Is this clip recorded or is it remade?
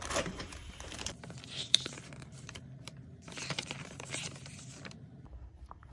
remade